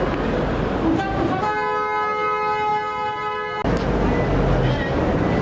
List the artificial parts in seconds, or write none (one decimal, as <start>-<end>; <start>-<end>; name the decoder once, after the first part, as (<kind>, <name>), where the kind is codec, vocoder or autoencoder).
none